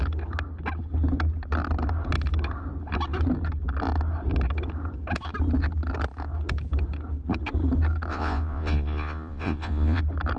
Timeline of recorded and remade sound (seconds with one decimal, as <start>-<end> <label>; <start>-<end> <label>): 0.0-8.1 recorded; 8.1-10.0 remade; 10.0-10.4 recorded